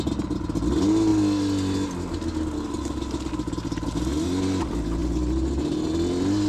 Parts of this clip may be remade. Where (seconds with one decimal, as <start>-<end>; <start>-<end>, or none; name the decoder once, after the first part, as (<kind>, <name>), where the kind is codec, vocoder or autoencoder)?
none